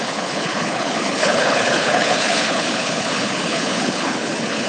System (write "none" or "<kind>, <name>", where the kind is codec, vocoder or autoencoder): codec, HILCodec